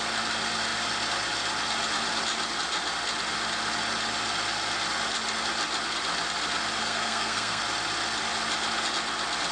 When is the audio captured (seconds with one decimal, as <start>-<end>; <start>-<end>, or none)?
0.0-6.8; 7.6-9.5